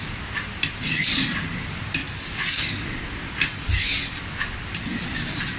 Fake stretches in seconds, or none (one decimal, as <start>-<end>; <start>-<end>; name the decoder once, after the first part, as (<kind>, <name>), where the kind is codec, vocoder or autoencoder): 0.0-5.6 (vocoder, BigVGAN v2)